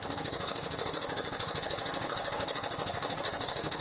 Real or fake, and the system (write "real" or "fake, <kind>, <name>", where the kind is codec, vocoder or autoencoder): fake, codec, DAC